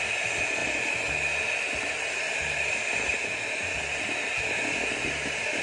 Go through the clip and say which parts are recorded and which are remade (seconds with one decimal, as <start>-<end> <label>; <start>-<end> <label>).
0.0-5.6 recorded